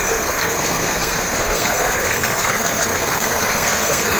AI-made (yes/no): yes